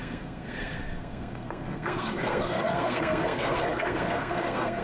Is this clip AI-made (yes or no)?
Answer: yes